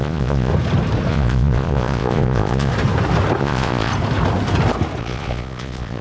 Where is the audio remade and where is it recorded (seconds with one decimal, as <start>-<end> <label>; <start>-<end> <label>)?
0.0-0.5 remade; 0.5-1.1 recorded; 1.1-2.7 remade; 2.7-3.4 recorded; 3.4-3.9 remade; 3.9-5.0 recorded; 5.0-6.0 remade